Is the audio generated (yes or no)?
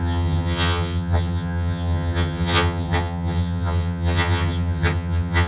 yes